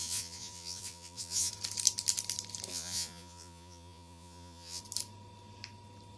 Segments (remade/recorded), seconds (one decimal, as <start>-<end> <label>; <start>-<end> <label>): 0.0-1.5 remade; 1.5-2.7 recorded; 2.7-4.8 remade; 4.8-6.2 recorded